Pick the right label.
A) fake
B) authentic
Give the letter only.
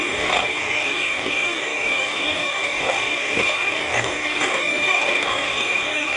A